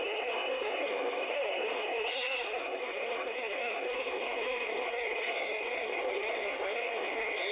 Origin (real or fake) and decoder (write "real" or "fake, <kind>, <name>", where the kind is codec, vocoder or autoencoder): fake, codec, SNAC